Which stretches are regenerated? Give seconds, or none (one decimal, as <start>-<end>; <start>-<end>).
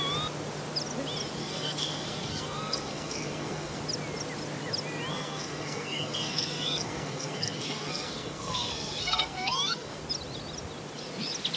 1.4-3.8; 5.1-10.0